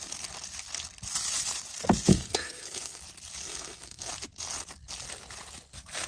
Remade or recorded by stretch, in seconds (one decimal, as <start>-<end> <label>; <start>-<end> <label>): 0.0-2.1 recorded; 2.1-3.0 remade; 3.0-3.4 recorded; 3.4-4.1 remade; 4.1-6.1 recorded